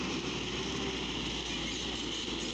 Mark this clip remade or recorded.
recorded